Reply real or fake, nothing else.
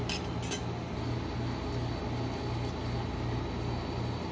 real